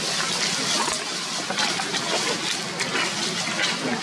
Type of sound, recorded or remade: recorded